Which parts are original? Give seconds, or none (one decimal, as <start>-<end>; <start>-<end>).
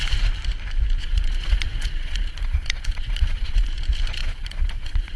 0.0-1.0; 3.7-4.2